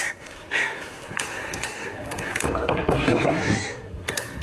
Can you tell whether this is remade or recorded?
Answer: remade